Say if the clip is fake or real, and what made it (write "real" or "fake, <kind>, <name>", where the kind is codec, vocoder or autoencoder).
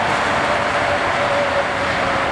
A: real